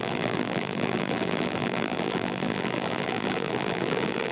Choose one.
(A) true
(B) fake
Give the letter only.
B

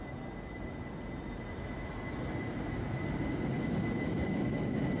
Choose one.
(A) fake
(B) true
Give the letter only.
B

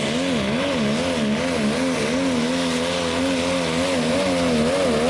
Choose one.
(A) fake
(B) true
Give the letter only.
B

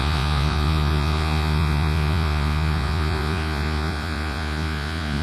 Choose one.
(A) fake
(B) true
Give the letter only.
A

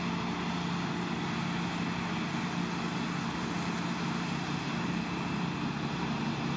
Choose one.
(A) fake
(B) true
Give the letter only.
B